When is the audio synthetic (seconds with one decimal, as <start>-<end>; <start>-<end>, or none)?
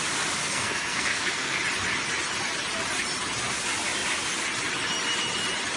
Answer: 0.4-1.6